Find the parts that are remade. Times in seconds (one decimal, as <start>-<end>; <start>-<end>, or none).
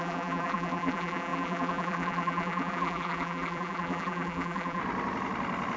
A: 0.0-4.8